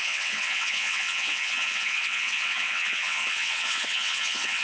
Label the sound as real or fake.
fake